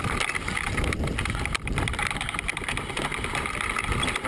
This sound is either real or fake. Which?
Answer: real